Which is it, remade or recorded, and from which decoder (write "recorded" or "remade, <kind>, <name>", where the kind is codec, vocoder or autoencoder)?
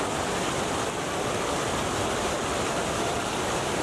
recorded